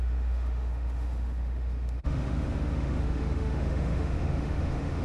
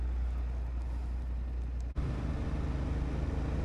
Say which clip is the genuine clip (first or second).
second